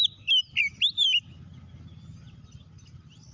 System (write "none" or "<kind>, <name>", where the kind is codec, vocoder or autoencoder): none